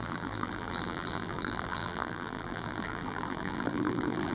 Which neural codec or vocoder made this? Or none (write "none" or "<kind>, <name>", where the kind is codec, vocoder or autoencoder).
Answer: vocoder, BigVGAN v2